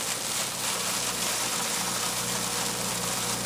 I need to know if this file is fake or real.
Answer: real